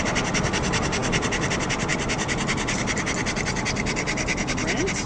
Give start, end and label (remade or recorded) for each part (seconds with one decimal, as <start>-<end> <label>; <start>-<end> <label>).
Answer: 0.0-5.1 recorded